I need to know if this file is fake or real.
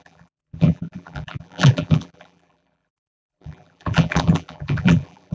fake